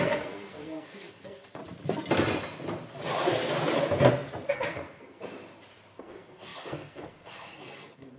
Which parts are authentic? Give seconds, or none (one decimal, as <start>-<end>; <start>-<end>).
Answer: 1.6-4.5; 5.2-6.0